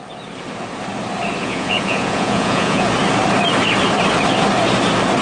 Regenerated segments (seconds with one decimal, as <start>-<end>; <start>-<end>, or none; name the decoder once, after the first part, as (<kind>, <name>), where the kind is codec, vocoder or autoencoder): 1.4-2.9 (vocoder, Vocos)